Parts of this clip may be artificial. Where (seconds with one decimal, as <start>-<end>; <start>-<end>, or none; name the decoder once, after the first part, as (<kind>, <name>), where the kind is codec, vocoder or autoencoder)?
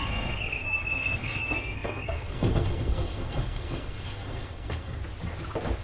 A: 0.0-5.0 (codec, SNAC)